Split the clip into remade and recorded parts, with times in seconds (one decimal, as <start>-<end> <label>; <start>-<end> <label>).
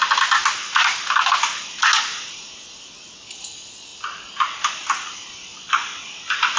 0.0-6.6 recorded